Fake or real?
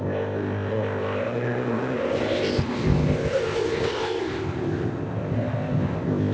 fake